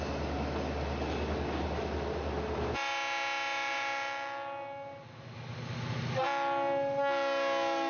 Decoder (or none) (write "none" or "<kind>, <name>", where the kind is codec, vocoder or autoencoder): none